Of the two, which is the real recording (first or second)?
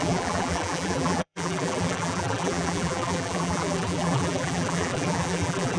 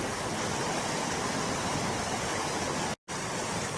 second